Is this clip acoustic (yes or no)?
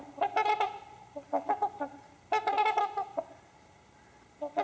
yes